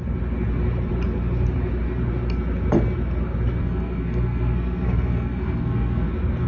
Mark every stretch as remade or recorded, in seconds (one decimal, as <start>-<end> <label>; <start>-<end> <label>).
0.0-3.6 recorded; 3.6-6.1 remade; 6.1-6.5 recorded